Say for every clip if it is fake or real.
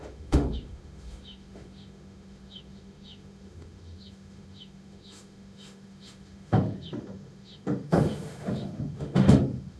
fake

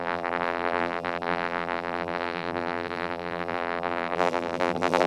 fake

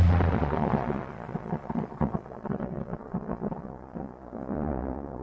fake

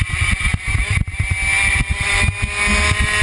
real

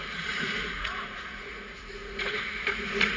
fake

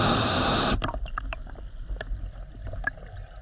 real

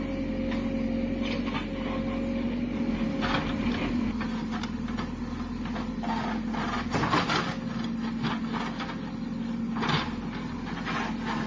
real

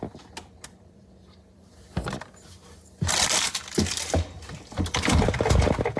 real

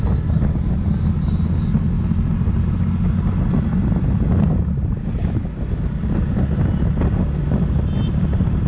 real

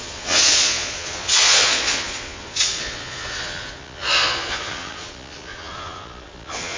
fake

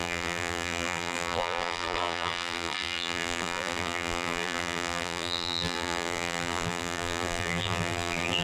fake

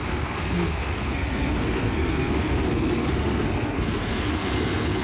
fake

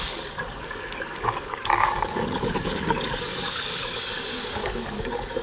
fake